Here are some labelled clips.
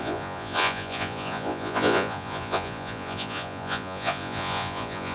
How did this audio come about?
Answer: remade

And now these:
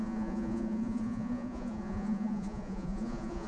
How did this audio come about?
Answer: remade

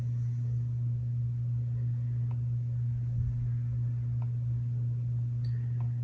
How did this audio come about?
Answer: recorded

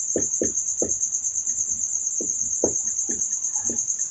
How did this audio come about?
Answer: recorded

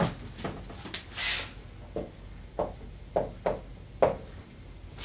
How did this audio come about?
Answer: recorded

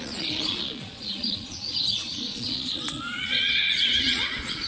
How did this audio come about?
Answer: remade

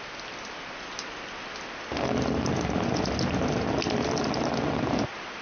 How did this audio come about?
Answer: recorded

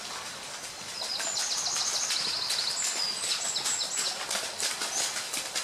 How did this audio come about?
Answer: recorded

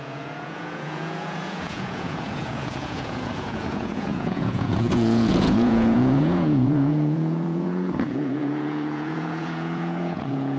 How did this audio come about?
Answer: remade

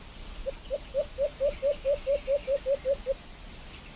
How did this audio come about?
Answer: recorded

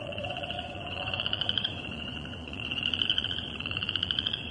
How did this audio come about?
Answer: remade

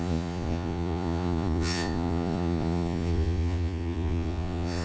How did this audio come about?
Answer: remade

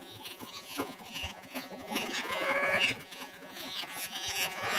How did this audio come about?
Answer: remade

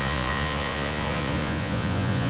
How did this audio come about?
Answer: remade